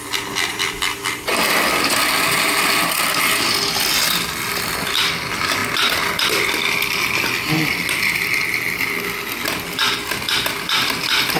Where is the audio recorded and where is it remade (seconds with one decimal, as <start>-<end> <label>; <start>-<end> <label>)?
0.0-1.3 recorded; 1.3-2.7 remade; 2.7-11.4 recorded